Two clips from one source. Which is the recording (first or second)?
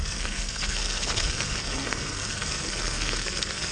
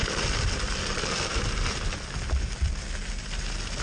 second